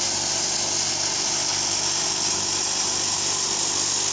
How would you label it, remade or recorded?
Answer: recorded